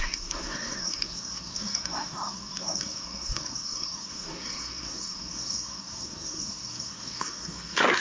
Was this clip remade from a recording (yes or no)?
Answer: yes